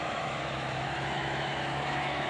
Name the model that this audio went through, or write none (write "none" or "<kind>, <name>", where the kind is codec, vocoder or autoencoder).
autoencoder, DAC-VAE